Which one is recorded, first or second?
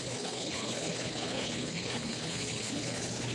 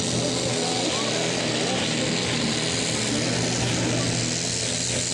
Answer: second